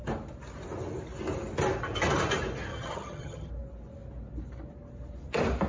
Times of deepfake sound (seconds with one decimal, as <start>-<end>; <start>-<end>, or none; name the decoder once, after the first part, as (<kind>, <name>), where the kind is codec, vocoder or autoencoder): 2.7-3.5 (vocoder, HiFi-GAN)